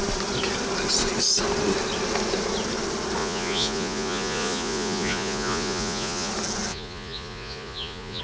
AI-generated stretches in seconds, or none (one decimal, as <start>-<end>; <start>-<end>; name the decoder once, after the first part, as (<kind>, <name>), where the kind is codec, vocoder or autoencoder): 3.2-6.3 (vocoder, Vocos); 6.7-8.2